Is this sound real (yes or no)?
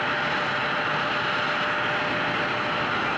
yes